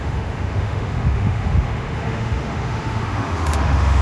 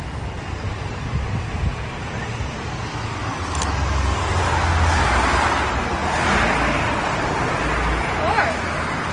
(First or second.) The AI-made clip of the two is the first